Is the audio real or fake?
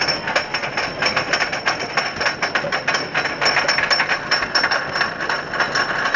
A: real